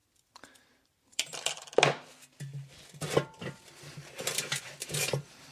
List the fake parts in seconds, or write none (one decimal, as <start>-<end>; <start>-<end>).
0.0-1.7; 2.5-5.5